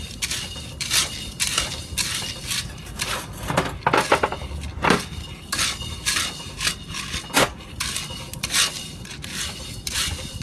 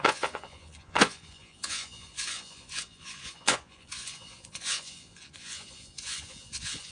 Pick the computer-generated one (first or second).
second